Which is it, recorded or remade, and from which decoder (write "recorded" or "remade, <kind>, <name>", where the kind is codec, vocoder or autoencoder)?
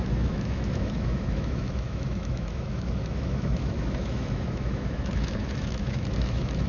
remade, autoencoder, DAC-VAE